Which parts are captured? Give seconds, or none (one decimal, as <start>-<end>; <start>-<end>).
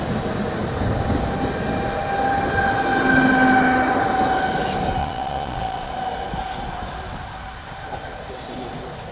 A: 0.0-5.0; 5.9-9.1